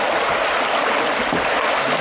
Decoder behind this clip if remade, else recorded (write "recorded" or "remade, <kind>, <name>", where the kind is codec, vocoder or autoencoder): recorded